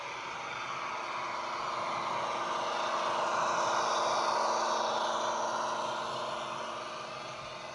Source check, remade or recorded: recorded